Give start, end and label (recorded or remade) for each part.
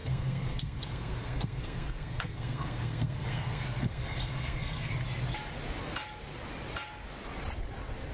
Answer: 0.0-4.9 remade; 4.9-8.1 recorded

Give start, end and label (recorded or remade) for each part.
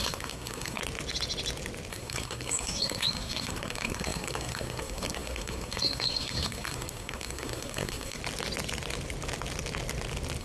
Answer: 0.0-0.8 remade; 0.8-1.9 recorded; 1.9-8.2 remade; 8.2-10.4 recorded